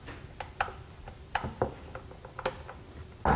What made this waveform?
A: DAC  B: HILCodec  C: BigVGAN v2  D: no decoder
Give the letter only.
D